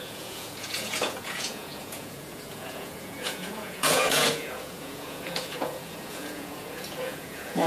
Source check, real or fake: fake